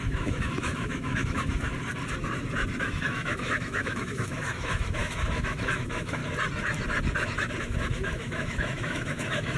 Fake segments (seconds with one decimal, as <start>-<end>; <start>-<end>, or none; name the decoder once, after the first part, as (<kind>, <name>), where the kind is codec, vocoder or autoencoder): 0.0-1.7 (autoencoder, DAC-VAE); 2.8-6.2; 7.6-9.6